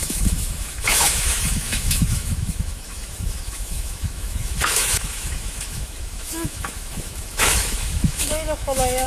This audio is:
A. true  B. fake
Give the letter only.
B